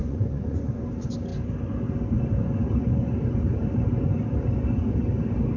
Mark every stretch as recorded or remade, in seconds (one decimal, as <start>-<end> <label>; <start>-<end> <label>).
0.0-0.8 remade; 0.8-5.6 recorded